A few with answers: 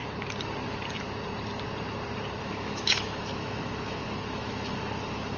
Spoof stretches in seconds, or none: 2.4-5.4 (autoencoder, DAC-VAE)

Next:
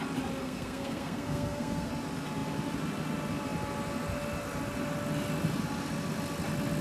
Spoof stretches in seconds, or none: 0.4-1.9 (codec, SNAC)

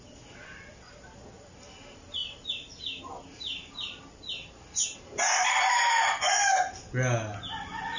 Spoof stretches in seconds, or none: none